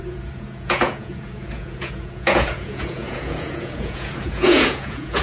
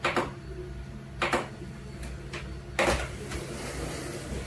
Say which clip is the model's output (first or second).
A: first